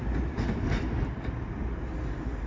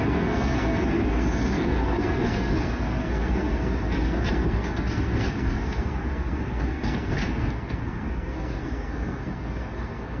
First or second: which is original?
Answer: first